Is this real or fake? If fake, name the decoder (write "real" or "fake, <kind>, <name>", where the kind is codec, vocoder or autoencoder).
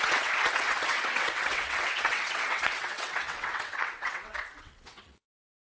fake, vocoder, WaveNeXt